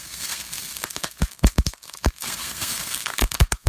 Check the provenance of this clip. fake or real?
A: fake